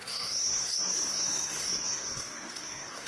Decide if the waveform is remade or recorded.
remade